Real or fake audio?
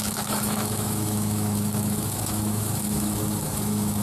fake